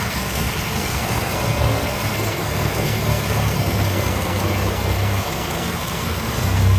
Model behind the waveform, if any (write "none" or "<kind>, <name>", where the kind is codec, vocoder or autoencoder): codec, SNAC